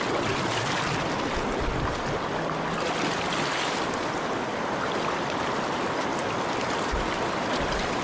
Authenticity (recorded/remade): recorded